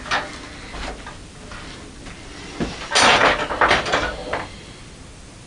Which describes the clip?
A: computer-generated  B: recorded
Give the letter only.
B